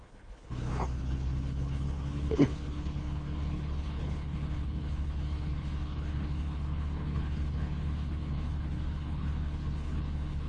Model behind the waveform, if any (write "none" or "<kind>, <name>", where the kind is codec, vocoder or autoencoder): codec, HILCodec